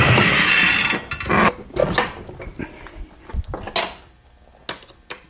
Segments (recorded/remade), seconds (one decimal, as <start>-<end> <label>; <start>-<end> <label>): 0.0-5.3 recorded